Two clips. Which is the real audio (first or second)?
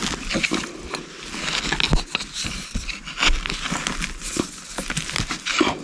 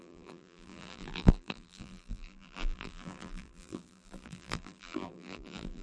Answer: first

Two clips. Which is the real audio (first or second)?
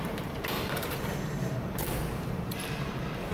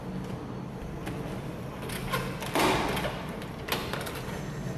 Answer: second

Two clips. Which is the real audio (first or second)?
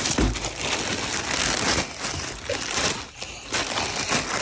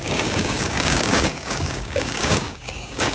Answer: first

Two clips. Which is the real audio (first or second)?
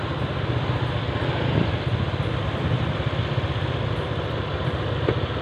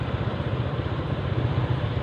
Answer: first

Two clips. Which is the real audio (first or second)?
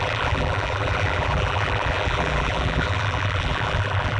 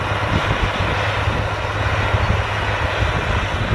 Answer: second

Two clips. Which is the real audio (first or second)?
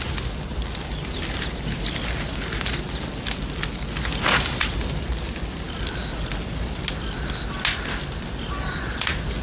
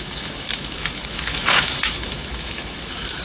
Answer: first